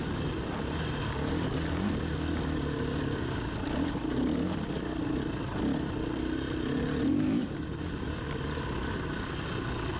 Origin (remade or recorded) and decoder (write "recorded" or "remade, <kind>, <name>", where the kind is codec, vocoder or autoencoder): recorded